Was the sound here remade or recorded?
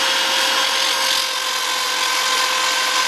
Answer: recorded